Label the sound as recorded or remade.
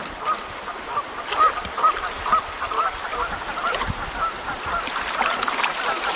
recorded